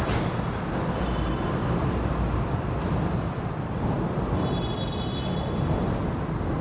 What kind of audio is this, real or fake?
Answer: real